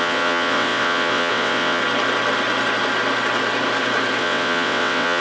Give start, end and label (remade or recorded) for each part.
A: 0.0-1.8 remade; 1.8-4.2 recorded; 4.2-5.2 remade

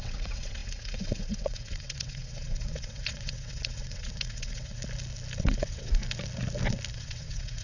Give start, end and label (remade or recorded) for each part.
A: 0.0-4.8 remade; 4.8-5.4 recorded; 5.4-6.0 remade; 6.0-6.9 recorded; 6.9-7.6 remade

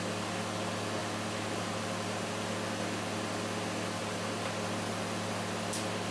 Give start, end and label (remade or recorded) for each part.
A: 0.0-6.1 recorded

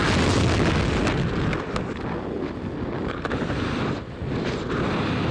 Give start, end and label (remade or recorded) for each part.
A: 0.0-5.3 recorded

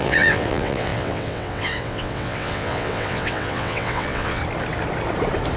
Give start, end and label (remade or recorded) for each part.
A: 0.0-4.4 remade; 4.4-5.6 recorded